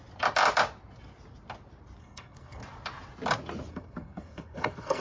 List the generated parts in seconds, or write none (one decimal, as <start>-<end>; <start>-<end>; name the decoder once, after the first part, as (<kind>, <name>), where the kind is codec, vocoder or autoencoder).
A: 2.0-2.6 (codec, SNAC); 3.7-5.0

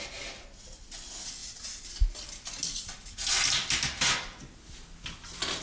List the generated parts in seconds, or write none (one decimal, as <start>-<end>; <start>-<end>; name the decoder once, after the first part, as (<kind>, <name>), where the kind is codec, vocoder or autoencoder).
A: none